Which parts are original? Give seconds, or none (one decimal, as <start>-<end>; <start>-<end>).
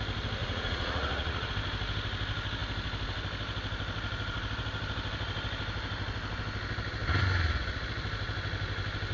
0.0-0.4; 1.5-9.1